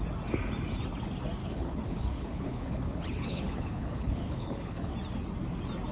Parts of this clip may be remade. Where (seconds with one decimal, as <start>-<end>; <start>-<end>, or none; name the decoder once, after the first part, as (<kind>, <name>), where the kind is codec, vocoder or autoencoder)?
1.4-4.9 (codec, HILCodec)